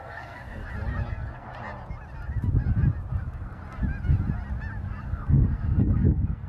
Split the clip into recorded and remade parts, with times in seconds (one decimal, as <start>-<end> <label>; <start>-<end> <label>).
0.0-0.6 remade; 0.6-1.1 recorded; 1.1-1.5 remade; 1.5-3.2 recorded; 3.2-3.6 remade; 3.6-5.0 recorded; 5.0-6.5 remade